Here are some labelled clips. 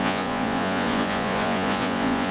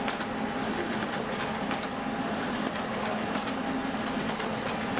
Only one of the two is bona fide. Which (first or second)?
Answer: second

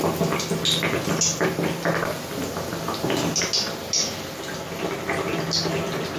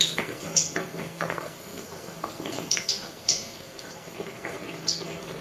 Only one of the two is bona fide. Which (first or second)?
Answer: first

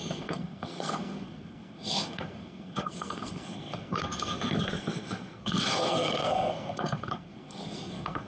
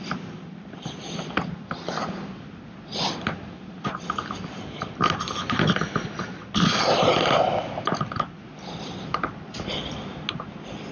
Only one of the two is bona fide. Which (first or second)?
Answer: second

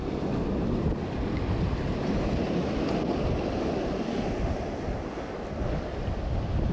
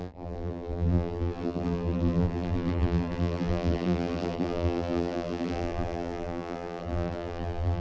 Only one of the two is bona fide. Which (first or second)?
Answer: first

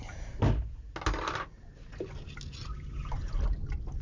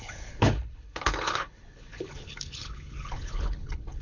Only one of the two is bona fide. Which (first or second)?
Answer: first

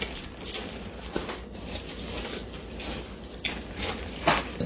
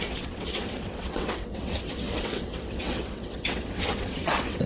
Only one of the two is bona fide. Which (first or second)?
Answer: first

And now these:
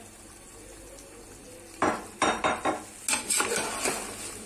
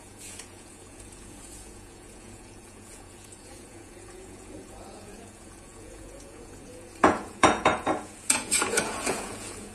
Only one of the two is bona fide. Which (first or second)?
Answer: first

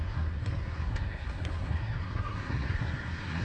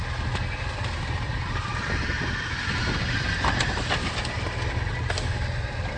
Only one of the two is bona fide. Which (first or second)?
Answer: second